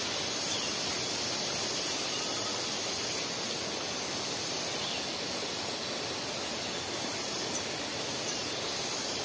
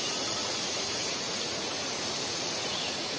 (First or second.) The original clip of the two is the first